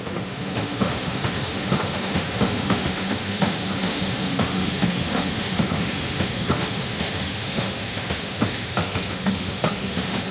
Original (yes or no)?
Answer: no